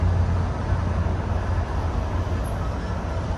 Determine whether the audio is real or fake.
real